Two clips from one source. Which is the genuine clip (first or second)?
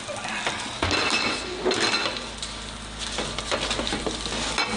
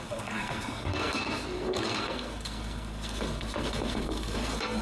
first